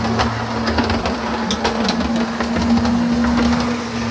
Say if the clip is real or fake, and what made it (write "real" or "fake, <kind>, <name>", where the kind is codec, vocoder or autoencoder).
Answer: real